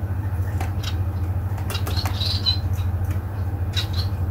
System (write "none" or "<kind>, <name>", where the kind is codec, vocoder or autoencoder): none